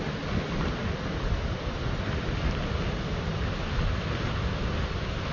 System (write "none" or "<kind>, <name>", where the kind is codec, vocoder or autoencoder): none